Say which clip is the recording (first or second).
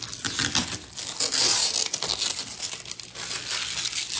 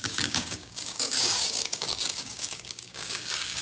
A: first